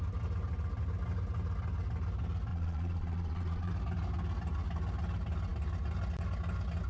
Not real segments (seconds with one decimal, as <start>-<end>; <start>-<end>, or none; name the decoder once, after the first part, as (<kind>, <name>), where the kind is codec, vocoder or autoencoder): 2.5-3.7 (vocoder, Vocos)